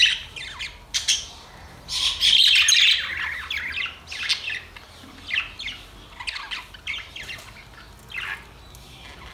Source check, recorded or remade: recorded